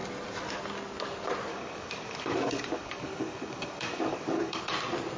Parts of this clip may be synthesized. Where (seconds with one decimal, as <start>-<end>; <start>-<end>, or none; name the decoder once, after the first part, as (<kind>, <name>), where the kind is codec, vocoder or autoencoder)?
1.5-4.6 (codec, DAC)